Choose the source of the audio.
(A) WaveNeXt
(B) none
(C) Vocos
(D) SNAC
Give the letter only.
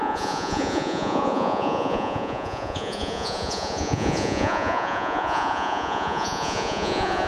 C